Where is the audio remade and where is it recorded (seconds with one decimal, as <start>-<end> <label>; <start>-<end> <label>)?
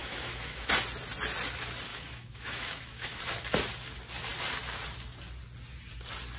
0.0-0.7 remade; 0.7-1.9 recorded; 1.9-3.2 remade; 3.2-6.4 recorded